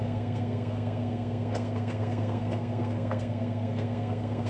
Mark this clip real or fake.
fake